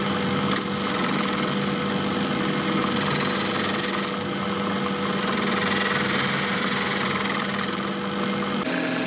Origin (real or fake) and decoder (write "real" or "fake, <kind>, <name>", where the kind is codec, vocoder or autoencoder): real